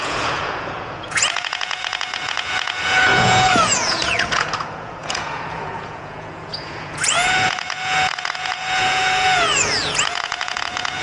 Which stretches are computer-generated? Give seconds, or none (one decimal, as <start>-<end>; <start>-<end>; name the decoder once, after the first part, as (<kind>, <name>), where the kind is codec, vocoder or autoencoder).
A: 0.0-11.0 (vocoder, Vocos)